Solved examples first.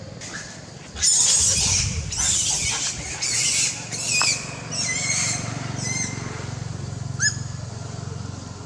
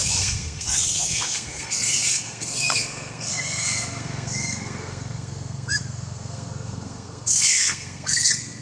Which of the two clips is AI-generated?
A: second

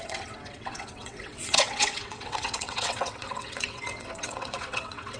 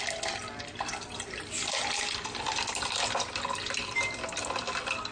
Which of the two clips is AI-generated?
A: first